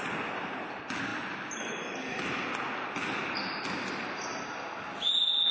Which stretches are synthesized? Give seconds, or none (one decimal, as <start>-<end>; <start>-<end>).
none